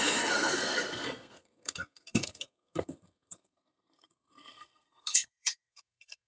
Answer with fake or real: fake